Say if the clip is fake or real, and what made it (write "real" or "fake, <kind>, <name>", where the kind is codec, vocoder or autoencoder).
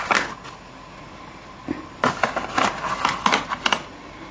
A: real